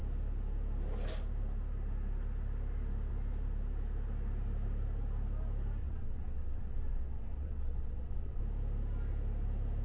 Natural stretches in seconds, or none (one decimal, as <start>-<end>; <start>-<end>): 0.0-5.8; 8.4-9.8